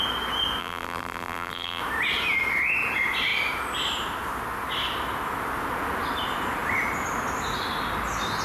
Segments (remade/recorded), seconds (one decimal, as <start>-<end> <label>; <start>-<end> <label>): 0.0-0.6 recorded; 0.6-1.8 remade; 1.8-8.4 recorded

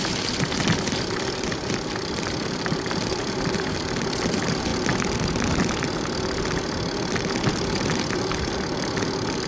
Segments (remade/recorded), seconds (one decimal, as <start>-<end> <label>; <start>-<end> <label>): 0.0-9.5 recorded

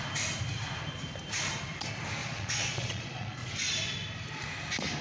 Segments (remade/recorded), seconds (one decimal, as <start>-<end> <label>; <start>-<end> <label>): 0.0-2.2 recorded; 2.2-3.5 remade; 3.5-5.0 recorded

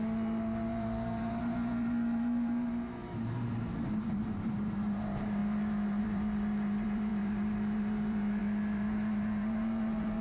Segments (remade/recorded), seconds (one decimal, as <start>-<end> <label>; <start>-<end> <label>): 0.0-10.2 remade

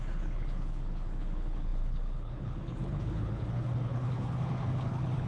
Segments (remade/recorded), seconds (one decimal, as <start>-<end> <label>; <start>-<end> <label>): 0.0-5.3 remade